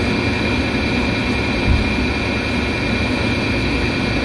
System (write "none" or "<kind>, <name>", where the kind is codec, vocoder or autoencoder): none